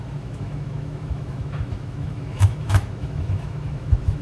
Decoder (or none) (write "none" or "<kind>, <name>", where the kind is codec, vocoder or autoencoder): autoencoder, DAC-VAE